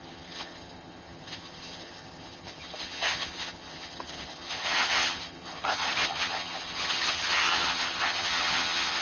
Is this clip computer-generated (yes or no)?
yes